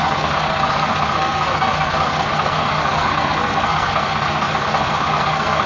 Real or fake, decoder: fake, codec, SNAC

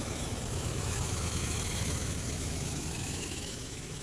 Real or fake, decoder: fake, autoencoder, DAC-VAE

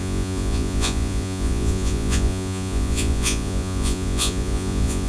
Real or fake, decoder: fake, vocoder, Vocos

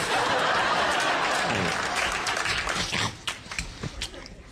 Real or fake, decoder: real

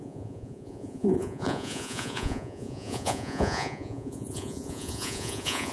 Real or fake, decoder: fake, vocoder, Vocos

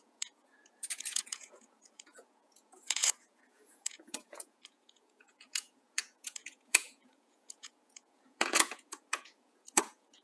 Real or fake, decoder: fake, vocoder, Vocos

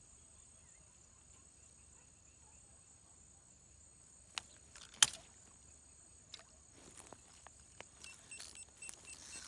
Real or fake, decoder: real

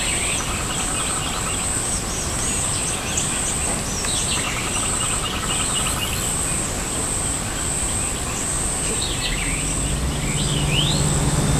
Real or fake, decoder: real